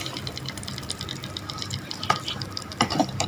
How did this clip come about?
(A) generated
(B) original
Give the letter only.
A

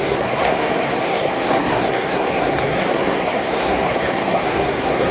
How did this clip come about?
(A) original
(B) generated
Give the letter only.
B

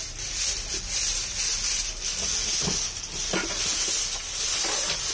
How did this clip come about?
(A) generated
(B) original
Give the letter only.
B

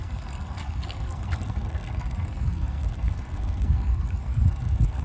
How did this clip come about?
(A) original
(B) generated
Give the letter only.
B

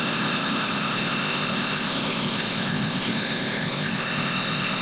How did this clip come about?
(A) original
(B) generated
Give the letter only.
B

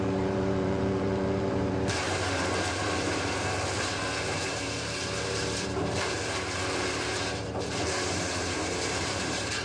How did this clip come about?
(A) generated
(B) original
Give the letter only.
A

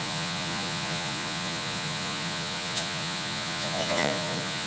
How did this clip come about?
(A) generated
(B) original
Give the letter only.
A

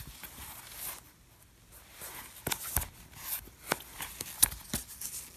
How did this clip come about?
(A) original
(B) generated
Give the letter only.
A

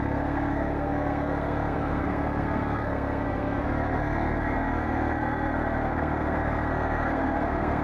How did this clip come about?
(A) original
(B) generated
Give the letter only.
B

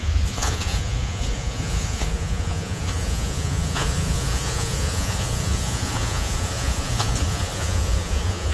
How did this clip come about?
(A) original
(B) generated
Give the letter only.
B